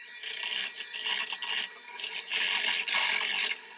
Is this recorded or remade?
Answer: recorded